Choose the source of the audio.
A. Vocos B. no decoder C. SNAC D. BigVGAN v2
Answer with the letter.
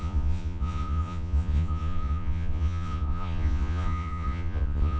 A